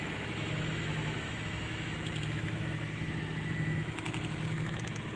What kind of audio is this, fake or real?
fake